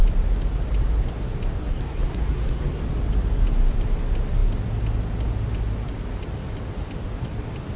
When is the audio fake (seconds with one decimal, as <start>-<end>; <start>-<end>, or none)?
1.6-2.8